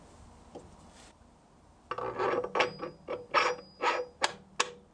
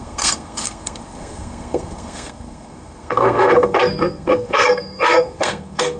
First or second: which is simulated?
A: second